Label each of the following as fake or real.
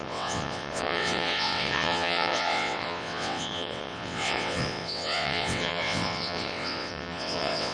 fake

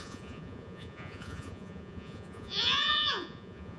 fake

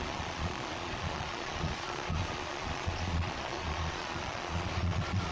fake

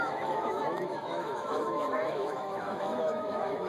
fake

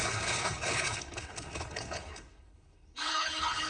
fake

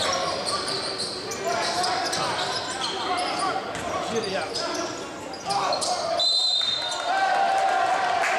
real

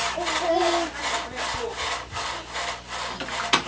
real